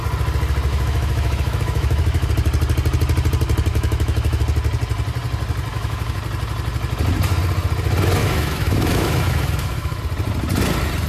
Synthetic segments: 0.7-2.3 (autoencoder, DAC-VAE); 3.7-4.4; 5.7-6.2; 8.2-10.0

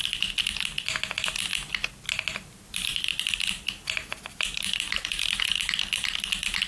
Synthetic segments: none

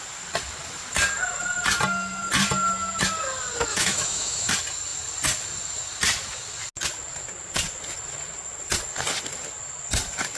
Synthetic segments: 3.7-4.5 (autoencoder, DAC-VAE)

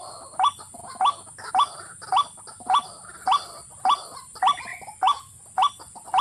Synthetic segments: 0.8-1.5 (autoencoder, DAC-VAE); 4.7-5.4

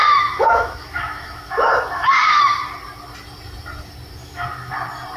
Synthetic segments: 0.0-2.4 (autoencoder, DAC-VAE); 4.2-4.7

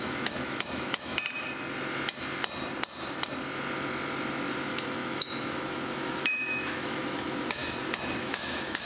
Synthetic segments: 0.0-1.1 (autoencoder, DAC-VAE); 4.7-7.6; 8.2-8.9

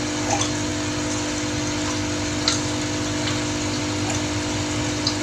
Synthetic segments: none

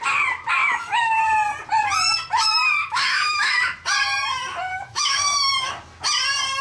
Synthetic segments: 0.6-1.2 (autoencoder, DAC-VAE); 2.8-3.5; 4.7-5.7